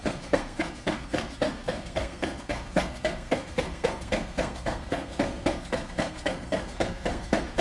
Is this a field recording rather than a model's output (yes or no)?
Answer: no